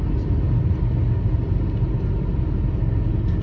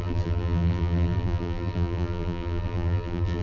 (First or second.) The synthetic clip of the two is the second